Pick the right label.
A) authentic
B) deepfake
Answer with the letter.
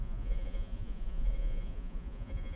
B